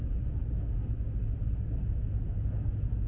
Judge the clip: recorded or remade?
recorded